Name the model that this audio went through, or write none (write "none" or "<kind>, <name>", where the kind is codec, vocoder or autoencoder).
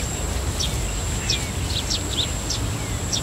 none